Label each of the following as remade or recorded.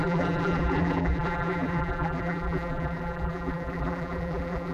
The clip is remade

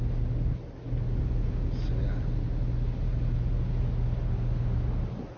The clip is recorded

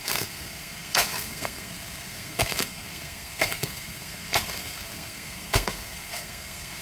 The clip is remade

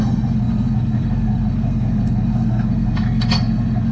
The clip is remade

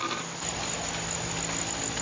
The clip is recorded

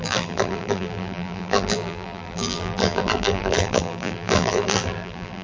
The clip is remade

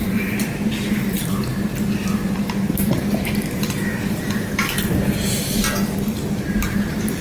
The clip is remade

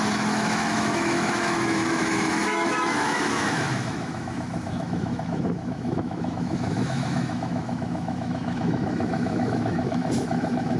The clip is remade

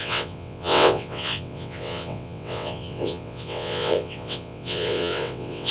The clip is remade